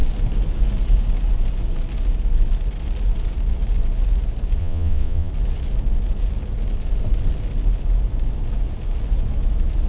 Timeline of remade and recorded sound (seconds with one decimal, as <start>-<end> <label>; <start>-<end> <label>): 0.0-4.6 recorded; 4.6-5.3 remade; 5.3-9.9 recorded